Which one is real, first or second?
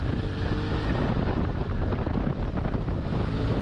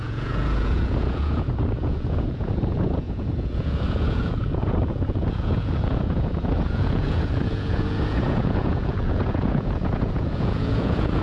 first